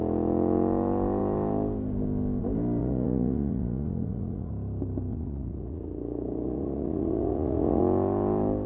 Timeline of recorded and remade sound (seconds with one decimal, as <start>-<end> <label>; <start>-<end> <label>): 0.0-2.8 recorded; 2.8-4.5 remade; 4.5-5.1 recorded; 5.1-7.8 remade; 7.8-8.7 recorded